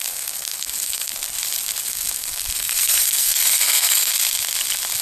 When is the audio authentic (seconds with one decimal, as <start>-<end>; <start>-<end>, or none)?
1.1-1.8; 4.1-5.0